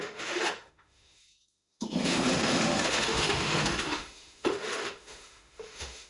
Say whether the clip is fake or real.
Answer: fake